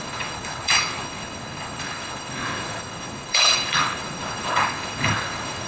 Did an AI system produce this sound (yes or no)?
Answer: yes